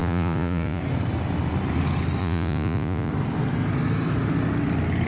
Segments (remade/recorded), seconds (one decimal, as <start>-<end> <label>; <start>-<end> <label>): 0.0-0.8 remade; 0.8-2.2 recorded; 2.2-3.1 remade; 3.1-5.1 recorded